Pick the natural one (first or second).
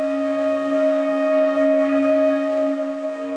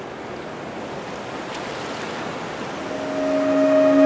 second